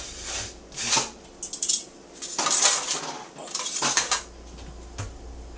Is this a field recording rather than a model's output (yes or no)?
yes